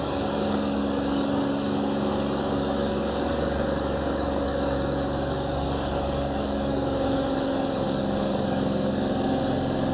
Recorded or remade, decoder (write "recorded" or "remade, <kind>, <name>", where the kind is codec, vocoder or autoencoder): remade, codec, DAC